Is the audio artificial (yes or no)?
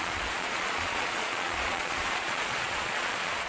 yes